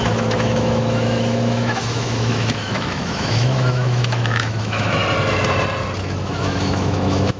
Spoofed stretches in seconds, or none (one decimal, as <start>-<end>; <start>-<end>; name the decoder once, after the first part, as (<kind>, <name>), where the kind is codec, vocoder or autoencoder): 0.0-5.0 (autoencoder, DAC-VAE); 6.0-7.4